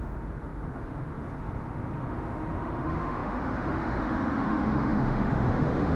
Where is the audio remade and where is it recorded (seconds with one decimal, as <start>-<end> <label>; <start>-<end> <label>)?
0.0-6.0 remade